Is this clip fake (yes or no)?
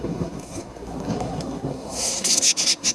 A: yes